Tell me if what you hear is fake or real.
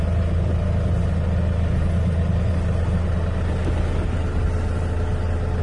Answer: real